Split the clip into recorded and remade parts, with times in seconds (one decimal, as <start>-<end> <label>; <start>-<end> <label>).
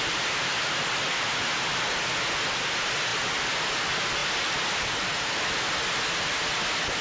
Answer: 0.0-7.0 recorded